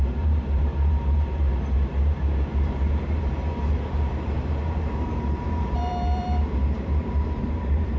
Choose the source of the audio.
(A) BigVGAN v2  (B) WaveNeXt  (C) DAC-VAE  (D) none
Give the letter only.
A